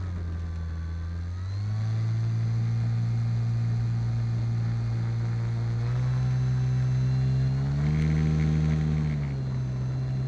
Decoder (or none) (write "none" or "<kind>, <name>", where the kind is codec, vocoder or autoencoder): none